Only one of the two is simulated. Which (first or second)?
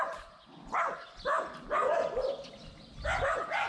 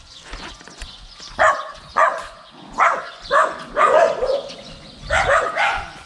second